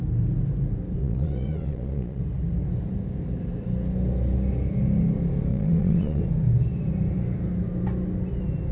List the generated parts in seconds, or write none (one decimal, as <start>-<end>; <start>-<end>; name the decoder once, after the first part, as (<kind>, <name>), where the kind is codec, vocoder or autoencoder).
1.0-2.2 (vocoder, Vocos); 5.5-6.2